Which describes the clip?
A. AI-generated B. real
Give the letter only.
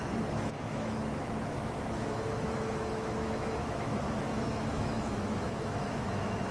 A